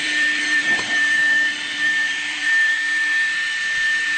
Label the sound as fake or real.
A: fake